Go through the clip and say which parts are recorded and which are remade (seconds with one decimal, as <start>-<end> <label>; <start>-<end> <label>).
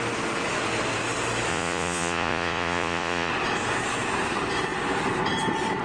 0.0-1.5 recorded; 1.5-3.3 remade; 3.3-5.8 recorded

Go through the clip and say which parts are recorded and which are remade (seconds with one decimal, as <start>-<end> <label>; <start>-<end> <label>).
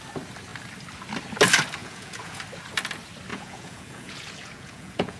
0.0-1.8 recorded; 1.8-2.4 remade; 2.4-3.3 recorded; 3.3-5.2 remade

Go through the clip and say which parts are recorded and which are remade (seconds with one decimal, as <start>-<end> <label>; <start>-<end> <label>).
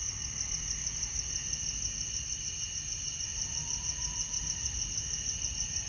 0.0-5.9 recorded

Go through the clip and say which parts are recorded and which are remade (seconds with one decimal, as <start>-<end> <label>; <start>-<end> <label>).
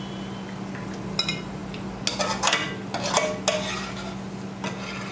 0.0-5.1 recorded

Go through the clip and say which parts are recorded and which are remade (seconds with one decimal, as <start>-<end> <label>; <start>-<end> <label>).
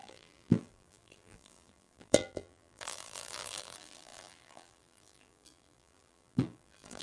0.0-7.0 remade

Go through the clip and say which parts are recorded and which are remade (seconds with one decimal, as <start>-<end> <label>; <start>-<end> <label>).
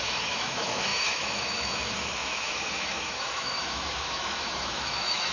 0.0-5.3 remade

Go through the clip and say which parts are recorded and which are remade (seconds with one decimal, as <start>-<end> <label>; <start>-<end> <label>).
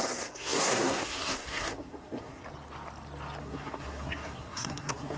0.0-2.4 remade; 2.4-3.4 recorded; 3.4-5.2 remade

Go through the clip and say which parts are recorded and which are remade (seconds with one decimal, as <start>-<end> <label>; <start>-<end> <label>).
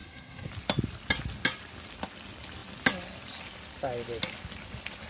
0.0-0.5 remade; 0.5-5.1 recorded